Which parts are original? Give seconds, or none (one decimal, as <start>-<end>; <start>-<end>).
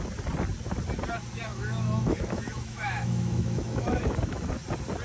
0.0-1.5; 4.5-5.0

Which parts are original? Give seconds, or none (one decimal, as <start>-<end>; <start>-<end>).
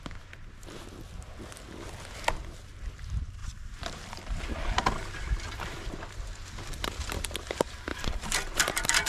0.0-3.4; 4.4-7.9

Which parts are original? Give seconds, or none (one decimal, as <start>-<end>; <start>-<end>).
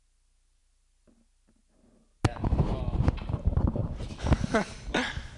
0.0-5.4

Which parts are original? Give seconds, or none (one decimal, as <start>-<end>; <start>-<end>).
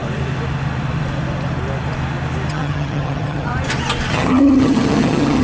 0.0-2.5; 3.5-4.1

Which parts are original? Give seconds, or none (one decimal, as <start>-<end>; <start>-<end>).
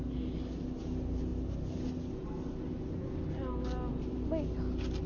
0.0-5.1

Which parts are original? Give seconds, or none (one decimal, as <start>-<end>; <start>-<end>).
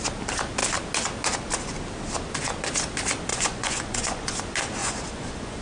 0.0-3.3; 4.3-4.8